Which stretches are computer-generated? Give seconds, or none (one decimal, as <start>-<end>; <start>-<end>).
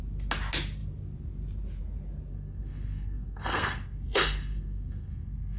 2.3-5.6